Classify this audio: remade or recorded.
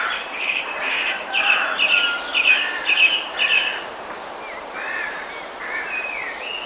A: recorded